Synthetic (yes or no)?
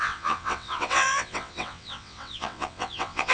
yes